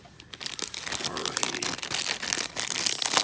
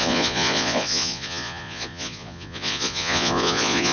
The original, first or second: first